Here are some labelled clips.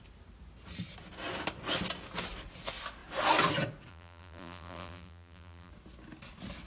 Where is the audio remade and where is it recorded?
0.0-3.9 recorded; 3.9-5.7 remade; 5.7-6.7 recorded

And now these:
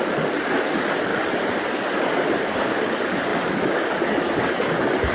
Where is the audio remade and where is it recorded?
0.0-1.1 remade; 1.1-1.7 recorded; 1.7-5.1 remade

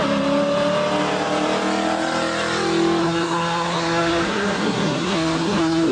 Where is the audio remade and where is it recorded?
0.0-3.0 recorded; 3.0-5.9 remade

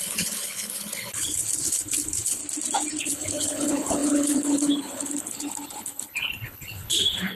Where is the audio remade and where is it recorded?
0.0-2.4 remade; 2.4-3.0 recorded; 3.0-7.4 remade

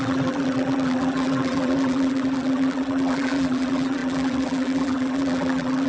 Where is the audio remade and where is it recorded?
0.0-5.9 remade

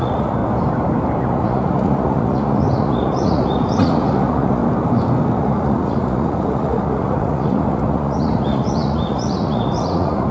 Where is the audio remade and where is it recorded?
0.0-0.4 remade; 0.4-1.2 recorded; 1.2-4.6 remade; 4.6-5.4 recorded; 5.4-10.3 remade

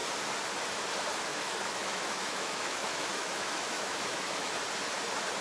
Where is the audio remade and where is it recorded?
0.0-1.3 recorded; 1.3-4.5 remade; 4.5-5.4 recorded

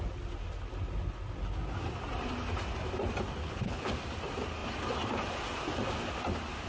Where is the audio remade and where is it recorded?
0.0-3.4 recorded; 3.4-3.9 remade; 3.9-6.7 recorded